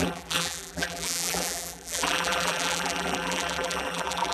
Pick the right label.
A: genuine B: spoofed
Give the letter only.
B